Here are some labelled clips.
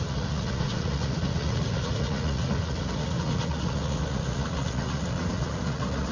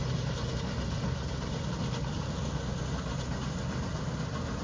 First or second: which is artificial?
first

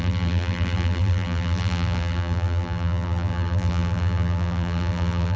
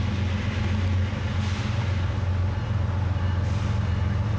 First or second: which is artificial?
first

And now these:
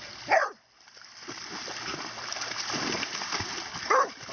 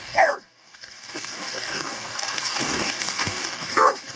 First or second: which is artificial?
second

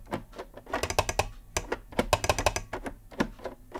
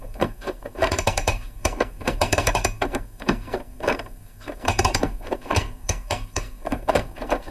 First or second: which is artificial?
second